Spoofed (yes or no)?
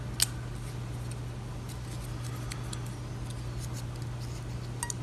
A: no